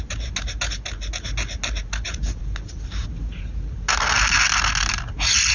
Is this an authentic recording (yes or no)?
yes